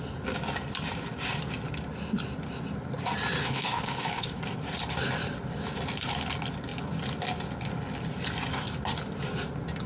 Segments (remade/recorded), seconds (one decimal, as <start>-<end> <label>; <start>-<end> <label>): 0.0-3.4 recorded; 3.4-4.4 remade; 4.4-9.9 recorded